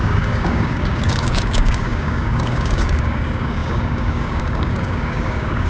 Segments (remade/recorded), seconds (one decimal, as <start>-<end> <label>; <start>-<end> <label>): 0.0-5.7 remade